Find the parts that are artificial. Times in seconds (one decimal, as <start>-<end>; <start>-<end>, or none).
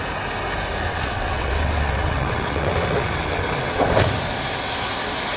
0.9-4.1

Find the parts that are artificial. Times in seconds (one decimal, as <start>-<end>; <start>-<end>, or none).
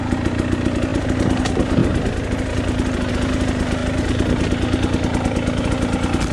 none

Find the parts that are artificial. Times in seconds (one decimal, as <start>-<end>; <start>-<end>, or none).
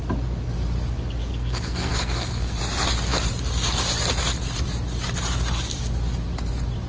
1.3-2.6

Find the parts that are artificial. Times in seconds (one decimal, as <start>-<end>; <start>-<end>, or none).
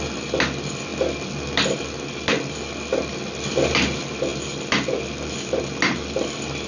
none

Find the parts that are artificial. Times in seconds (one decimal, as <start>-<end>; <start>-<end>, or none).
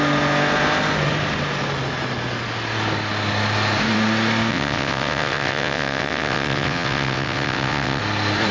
4.5-8.0